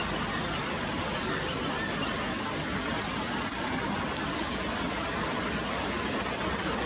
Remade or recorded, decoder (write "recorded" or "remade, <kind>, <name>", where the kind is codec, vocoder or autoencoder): recorded